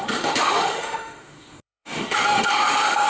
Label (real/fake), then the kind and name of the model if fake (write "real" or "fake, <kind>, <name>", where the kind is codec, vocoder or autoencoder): fake, autoencoder, DAC-VAE